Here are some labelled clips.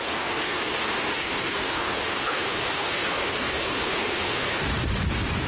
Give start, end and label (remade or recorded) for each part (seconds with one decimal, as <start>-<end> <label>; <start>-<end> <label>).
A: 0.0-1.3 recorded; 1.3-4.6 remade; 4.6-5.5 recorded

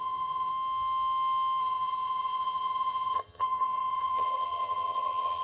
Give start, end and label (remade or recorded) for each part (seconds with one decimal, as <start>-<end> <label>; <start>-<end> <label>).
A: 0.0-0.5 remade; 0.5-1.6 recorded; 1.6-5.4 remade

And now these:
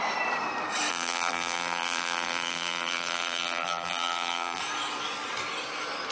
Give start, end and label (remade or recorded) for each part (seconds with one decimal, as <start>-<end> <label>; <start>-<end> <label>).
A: 0.0-0.9 recorded; 0.9-4.6 remade; 4.6-6.1 recorded

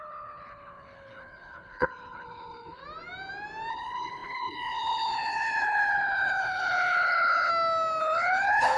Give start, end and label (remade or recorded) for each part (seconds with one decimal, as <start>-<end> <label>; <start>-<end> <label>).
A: 0.0-2.8 remade; 2.8-3.7 recorded; 3.7-7.5 remade; 7.5-8.0 recorded; 8.0-8.8 remade

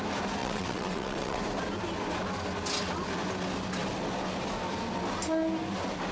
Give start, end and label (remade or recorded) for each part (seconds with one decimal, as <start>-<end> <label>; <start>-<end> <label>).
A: 0.0-0.4 recorded; 0.4-1.4 remade; 1.4-6.1 recorded

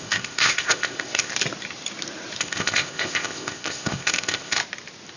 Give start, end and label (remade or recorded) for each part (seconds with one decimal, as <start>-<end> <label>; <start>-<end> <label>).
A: 0.0-1.3 remade; 1.3-2.4 recorded; 2.4-4.6 remade; 4.6-5.2 recorded